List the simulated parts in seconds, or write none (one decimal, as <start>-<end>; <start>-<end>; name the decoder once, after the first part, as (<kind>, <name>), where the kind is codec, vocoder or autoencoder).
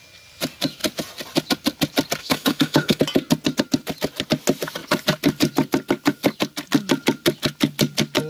2.2-3.0 (autoencoder, DAC-VAE)